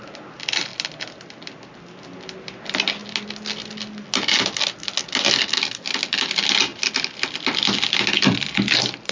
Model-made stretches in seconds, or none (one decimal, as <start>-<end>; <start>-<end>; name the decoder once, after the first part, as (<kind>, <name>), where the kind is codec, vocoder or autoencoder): none